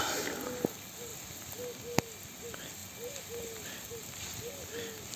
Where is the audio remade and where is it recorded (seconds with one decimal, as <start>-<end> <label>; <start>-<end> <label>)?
0.0-5.2 recorded